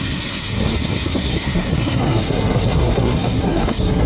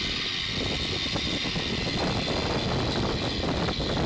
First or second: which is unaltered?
second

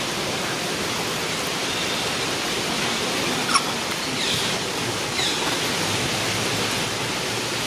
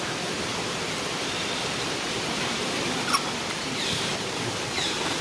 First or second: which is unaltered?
first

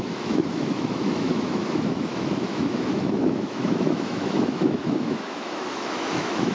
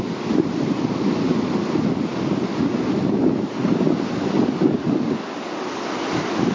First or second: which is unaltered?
second